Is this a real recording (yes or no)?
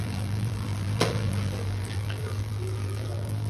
no